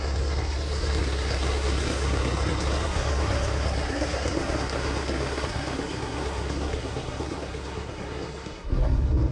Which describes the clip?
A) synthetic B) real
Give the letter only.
A